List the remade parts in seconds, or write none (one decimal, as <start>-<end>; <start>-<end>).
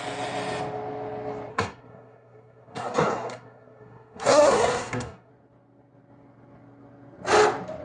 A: 1.5-5.3